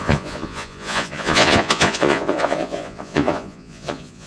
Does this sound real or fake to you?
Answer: fake